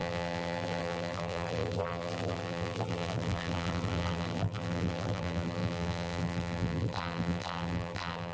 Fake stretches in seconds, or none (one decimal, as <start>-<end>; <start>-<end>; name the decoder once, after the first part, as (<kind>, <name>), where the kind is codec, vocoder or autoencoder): 0.0-8.3 (vocoder, BigVGAN v2)